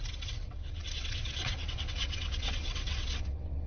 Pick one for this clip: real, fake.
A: fake